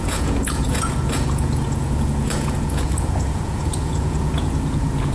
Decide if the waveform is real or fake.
fake